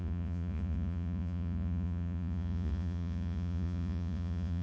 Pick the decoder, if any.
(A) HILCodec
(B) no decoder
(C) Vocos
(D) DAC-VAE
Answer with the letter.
C